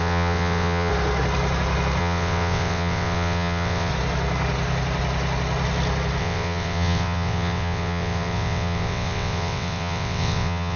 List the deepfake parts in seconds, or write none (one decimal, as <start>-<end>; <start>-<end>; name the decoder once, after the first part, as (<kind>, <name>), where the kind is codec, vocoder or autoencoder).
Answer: 0.0-0.9 (vocoder, WaveNeXt); 2.0-3.9; 6.2-10.8